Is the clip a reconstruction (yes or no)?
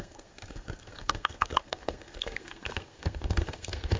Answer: yes